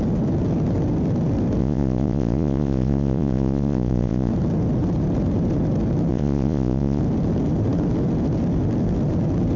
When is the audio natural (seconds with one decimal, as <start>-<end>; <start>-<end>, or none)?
0.0-1.6; 4.3-6.1; 7.0-9.6